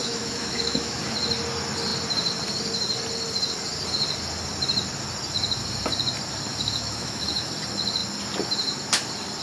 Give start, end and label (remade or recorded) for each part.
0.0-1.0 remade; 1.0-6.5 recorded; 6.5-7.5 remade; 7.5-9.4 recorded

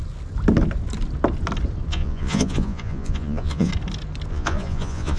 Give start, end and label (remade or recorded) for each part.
0.0-1.9 recorded; 1.9-3.7 remade; 3.7-4.3 recorded; 4.3-5.2 remade

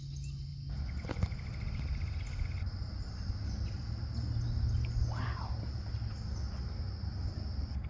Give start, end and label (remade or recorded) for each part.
0.0-7.9 recorded

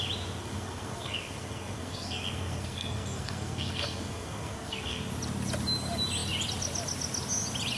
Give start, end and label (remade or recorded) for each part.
0.0-0.4 recorded; 0.4-5.0 remade; 5.0-7.8 recorded

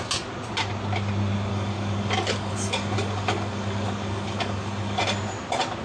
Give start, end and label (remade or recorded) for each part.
0.0-1.5 recorded; 1.5-5.0 remade; 5.0-5.8 recorded

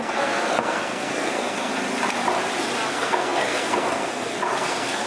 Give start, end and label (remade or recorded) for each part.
0.0-1.7 remade; 1.7-2.9 recorded; 2.9-5.1 remade

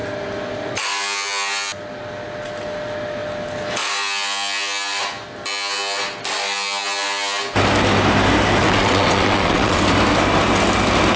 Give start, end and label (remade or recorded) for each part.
0.0-8.6 recorded; 8.6-9.8 remade; 9.8-11.2 recorded

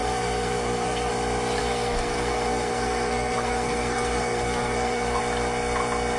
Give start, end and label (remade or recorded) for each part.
0.0-1.1 remade; 1.1-1.6 recorded; 1.6-5.2 remade; 5.2-6.2 recorded